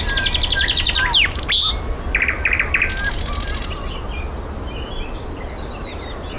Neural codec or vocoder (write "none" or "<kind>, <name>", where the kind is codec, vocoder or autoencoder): none